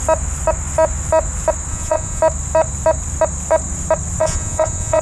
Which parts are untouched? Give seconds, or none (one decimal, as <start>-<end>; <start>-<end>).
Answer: 0.0-1.7; 2.2-4.2